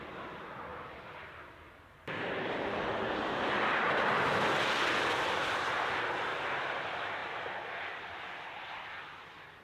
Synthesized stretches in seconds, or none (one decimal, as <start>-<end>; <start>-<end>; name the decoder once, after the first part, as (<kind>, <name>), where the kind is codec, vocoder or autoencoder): none